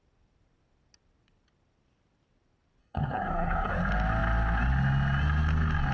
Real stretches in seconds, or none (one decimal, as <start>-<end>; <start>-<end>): 0.0-2.8; 3.7-5.9